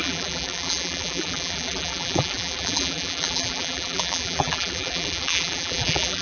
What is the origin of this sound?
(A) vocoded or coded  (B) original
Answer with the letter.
A